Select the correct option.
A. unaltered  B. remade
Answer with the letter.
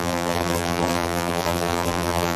B